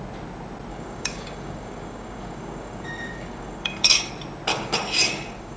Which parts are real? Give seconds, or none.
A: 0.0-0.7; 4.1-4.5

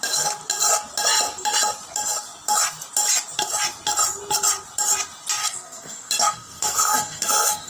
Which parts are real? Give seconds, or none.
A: 0.0-5.4

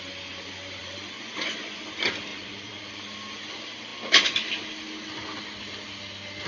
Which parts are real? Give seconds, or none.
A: 0.0-0.8; 1.8-2.3; 3.0-6.5

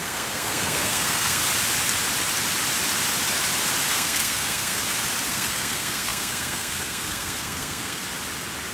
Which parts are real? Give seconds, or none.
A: 1.4-3.9; 4.8-5.3; 8.0-8.7